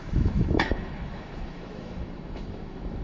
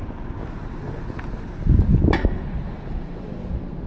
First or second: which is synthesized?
first